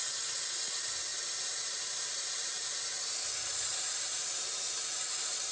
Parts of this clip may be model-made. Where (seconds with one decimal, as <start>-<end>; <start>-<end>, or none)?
1.1-2.8; 3.7-4.4